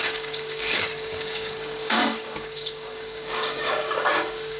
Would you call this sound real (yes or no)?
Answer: no